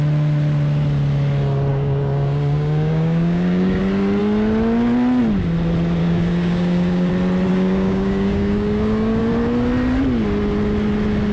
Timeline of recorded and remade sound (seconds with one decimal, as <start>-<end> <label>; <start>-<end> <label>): 0.0-1.7 recorded; 1.7-3.8 remade; 3.8-6.0 recorded; 6.0-7.1 remade; 7.1-7.5 recorded; 7.5-9.2 remade; 9.2-11.3 recorded